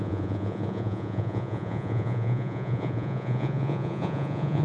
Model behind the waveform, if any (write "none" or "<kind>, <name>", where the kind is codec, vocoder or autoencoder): vocoder, Vocos